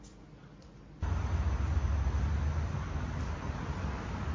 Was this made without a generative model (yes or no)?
yes